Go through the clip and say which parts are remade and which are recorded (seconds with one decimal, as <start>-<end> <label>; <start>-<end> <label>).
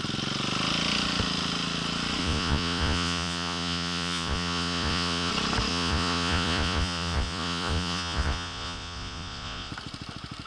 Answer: 0.0-2.2 recorded; 2.2-5.3 remade; 5.3-5.7 recorded; 5.7-9.7 remade; 9.7-10.5 recorded